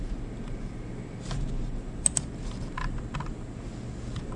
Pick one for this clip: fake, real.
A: real